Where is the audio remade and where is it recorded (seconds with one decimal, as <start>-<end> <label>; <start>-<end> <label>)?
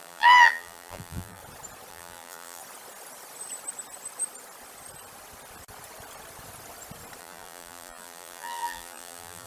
0.0-1.4 remade; 1.4-1.9 recorded; 1.9-2.6 remade; 2.6-7.2 recorded; 7.2-9.5 remade